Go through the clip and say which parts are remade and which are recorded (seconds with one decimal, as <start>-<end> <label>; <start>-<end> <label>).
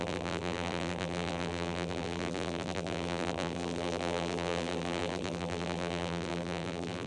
0.0-7.1 remade